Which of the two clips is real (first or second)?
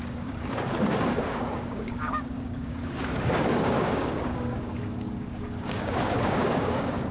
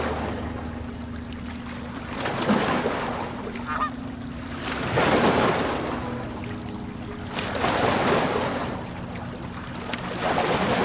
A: second